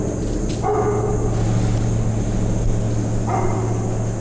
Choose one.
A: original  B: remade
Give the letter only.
A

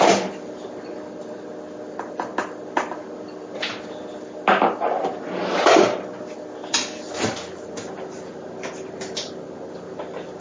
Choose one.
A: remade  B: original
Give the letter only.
B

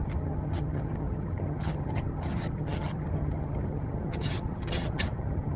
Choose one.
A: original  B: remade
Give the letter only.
B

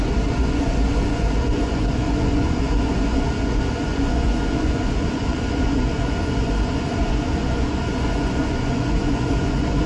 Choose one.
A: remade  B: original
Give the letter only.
A